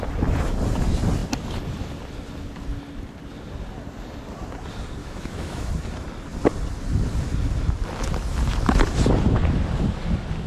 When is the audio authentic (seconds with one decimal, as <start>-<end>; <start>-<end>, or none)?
0.0-5.0; 5.7-10.5

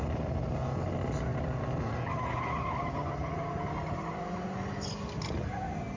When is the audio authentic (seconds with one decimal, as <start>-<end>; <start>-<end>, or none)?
0.0-6.0

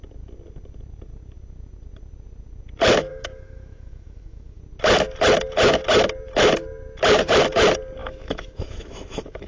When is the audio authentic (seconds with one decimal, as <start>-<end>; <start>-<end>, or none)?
0.0-3.1; 4.6-8.0